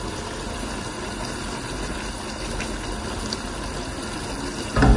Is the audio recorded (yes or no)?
yes